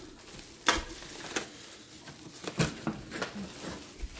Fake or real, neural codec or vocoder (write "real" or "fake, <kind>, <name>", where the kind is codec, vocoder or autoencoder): real